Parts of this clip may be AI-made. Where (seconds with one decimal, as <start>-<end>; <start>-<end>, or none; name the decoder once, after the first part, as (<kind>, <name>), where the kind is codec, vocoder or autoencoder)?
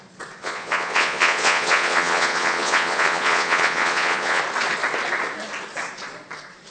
0.4-4.4 (vocoder, Vocos)